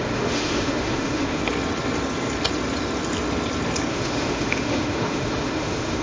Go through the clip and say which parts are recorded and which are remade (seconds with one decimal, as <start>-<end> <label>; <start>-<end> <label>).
0.0-1.4 remade; 1.4-3.9 recorded; 3.9-6.0 remade